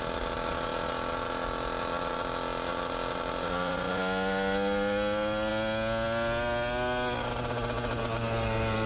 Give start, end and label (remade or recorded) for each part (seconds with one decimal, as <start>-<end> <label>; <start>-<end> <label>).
0.0-8.9 recorded